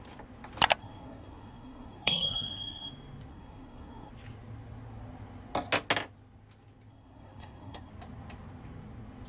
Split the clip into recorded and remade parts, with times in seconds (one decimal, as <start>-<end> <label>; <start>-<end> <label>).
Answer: 0.0-0.8 recorded; 0.8-2.9 remade; 2.9-3.3 recorded; 3.3-4.1 remade; 4.1-6.9 recorded; 6.9-7.9 remade; 7.9-9.3 recorded